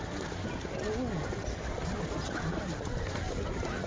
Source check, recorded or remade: recorded